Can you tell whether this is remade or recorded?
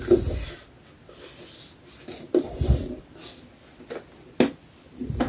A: recorded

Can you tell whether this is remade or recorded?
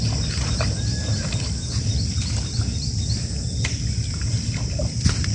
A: recorded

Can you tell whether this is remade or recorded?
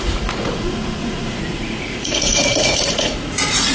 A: remade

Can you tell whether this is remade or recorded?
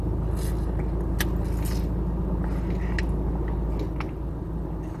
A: recorded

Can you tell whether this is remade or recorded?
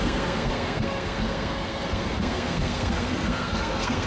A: remade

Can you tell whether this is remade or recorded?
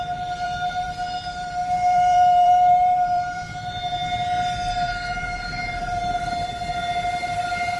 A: remade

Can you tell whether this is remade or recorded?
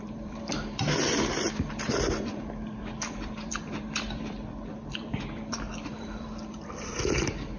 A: remade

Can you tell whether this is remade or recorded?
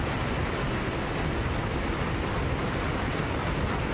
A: recorded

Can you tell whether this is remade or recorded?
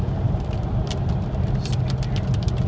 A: recorded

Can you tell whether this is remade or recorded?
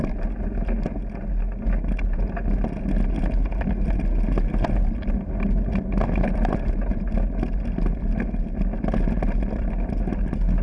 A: recorded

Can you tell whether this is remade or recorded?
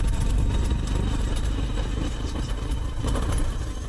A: remade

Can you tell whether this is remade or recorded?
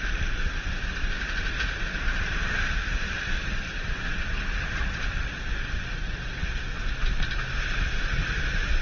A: recorded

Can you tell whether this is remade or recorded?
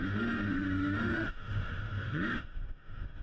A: remade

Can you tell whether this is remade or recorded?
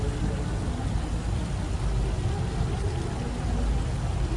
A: recorded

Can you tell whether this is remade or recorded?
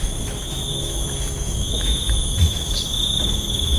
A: remade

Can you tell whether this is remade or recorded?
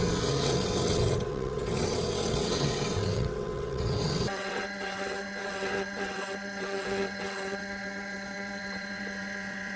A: remade